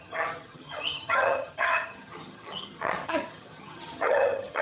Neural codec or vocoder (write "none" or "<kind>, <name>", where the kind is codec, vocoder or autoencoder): vocoder, HiFi-GAN